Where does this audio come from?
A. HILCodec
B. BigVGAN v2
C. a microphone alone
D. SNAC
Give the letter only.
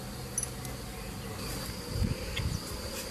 C